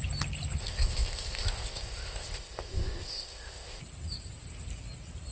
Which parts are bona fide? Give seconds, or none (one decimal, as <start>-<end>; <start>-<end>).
0.0-0.6; 3.8-5.3

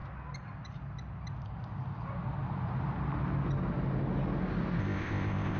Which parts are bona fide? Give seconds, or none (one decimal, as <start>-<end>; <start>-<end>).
0.0-4.8

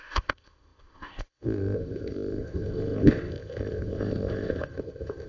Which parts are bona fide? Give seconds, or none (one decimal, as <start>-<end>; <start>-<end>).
none

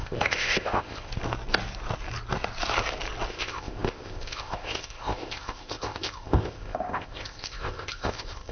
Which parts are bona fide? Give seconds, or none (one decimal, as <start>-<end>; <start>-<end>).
1.1-3.3

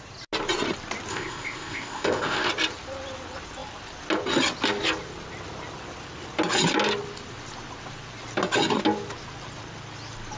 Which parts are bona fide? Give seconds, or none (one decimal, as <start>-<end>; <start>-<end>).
0.0-1.1; 2.5-10.4

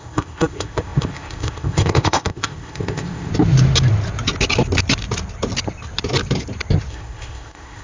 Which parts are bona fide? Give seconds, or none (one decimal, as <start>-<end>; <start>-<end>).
3.3-6.9

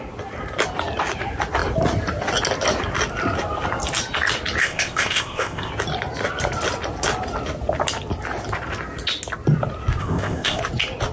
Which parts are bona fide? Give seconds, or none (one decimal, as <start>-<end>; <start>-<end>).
0.0-4.6; 5.7-10.0; 10.6-11.1

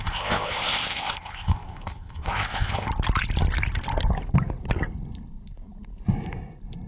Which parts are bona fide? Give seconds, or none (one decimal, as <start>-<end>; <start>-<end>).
2.9-6.9